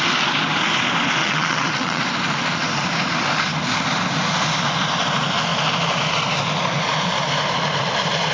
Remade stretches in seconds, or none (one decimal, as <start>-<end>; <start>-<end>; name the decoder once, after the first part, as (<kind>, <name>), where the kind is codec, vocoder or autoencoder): 1.2-2.0 (vocoder, WaveNeXt)